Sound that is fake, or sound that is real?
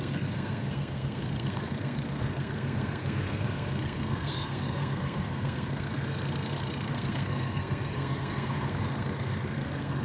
fake